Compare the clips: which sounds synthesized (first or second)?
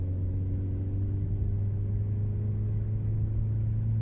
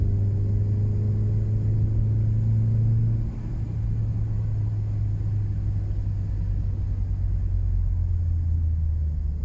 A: first